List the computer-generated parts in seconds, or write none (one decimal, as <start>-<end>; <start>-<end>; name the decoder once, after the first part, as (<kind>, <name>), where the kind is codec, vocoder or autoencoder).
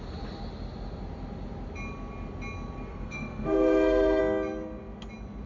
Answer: 2.9-4.2 (codec, SNAC)